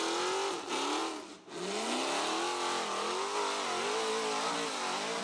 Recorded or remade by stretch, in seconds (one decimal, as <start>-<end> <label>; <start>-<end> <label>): 0.0-5.2 recorded